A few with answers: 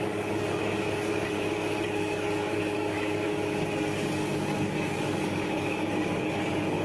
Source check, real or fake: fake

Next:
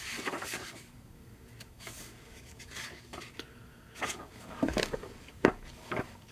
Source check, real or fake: fake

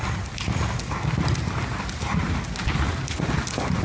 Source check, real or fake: real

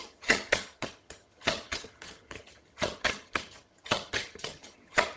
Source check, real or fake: fake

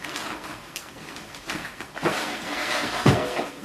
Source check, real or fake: fake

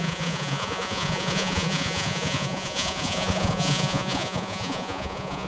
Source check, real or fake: fake